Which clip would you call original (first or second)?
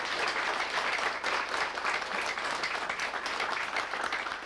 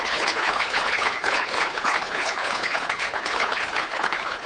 first